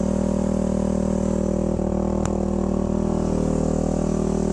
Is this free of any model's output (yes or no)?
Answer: yes